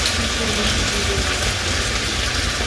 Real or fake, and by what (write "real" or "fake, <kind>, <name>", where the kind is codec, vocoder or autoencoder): real